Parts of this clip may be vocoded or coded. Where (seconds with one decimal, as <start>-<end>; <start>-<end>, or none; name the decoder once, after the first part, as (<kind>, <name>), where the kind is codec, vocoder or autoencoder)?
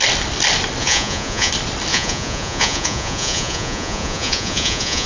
0.8-1.5 (vocoder, Vocos); 1.9-5.1